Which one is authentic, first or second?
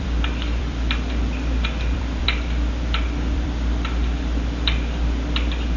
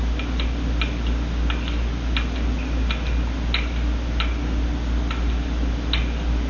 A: second